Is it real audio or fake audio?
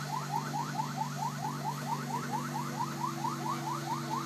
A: real